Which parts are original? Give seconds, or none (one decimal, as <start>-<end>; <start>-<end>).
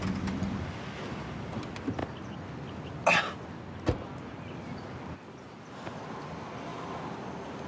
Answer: 0.0-7.7